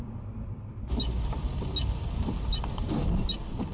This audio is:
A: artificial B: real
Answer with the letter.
B